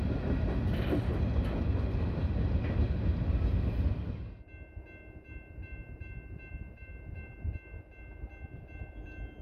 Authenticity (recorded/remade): recorded